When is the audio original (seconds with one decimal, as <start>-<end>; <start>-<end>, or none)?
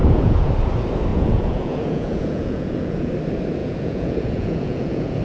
0.5-1.1; 3.1-3.6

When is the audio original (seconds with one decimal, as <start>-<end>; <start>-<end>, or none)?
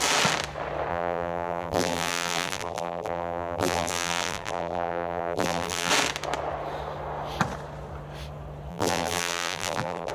0.0-0.9; 5.9-8.7